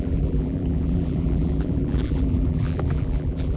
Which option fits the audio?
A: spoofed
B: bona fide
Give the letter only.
A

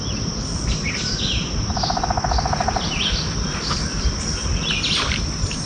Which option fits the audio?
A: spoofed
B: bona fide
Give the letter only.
B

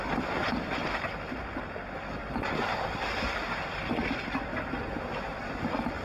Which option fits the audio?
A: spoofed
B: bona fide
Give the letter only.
B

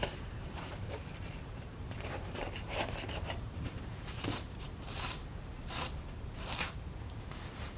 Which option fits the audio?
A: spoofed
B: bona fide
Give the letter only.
A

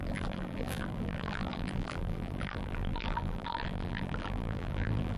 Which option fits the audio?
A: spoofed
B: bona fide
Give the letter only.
A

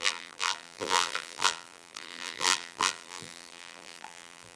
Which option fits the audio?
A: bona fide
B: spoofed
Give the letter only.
B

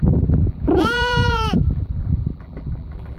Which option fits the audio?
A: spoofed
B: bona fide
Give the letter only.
A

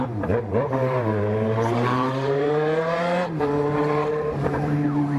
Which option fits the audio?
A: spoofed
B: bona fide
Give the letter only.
A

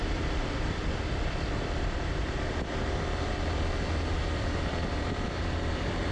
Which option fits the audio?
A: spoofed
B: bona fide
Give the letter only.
A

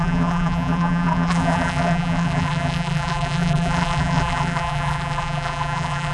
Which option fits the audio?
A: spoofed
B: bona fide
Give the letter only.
A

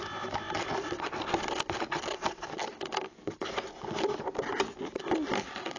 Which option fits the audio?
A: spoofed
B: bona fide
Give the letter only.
B